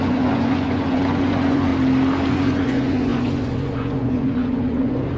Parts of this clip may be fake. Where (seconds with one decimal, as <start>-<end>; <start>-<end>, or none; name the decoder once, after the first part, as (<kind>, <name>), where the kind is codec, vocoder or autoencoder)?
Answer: 0.0-1.7 (vocoder, Vocos); 2.3-5.2